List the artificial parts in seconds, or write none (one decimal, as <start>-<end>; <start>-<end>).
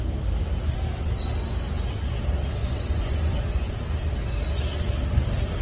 2.6-3.7